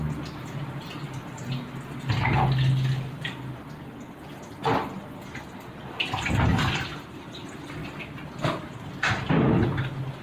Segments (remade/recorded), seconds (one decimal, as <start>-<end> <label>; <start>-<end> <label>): 0.0-10.2 recorded